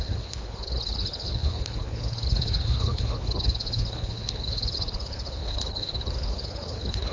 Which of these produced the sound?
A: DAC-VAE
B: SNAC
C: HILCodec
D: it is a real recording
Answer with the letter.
C